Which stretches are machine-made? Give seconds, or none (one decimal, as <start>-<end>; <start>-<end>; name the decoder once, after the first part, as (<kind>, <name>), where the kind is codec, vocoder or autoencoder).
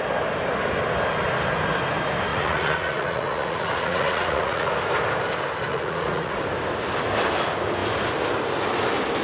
2.3-4.7 (vocoder, Vocos); 5.7-6.4